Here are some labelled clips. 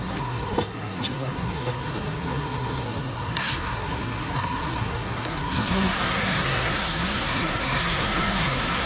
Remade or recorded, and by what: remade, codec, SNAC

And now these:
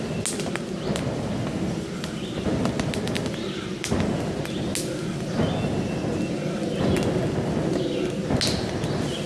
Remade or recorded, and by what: recorded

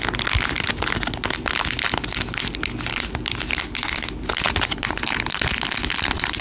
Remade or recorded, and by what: recorded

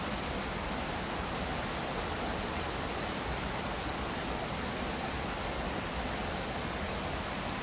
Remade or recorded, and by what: recorded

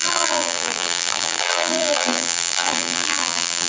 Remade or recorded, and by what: remade, vocoder, BigVGAN v2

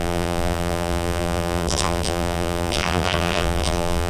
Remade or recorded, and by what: remade, vocoder, BigVGAN v2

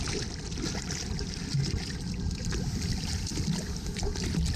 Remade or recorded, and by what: recorded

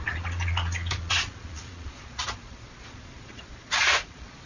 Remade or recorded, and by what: remade, vocoder, Vocos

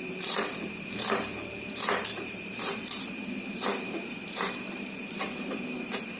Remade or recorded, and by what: remade, vocoder, BigVGAN v2